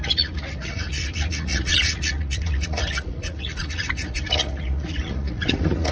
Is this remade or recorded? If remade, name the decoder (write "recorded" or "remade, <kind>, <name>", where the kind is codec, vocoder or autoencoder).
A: remade, vocoder, Vocos